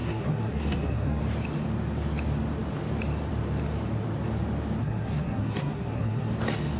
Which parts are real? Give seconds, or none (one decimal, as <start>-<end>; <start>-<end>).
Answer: 1.2-4.8; 6.3-6.8